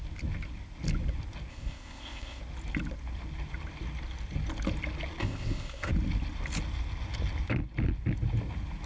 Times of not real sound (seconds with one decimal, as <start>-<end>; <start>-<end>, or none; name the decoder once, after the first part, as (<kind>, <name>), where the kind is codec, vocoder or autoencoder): 1.5-2.4 (codec, ZipCodec); 5.2-5.9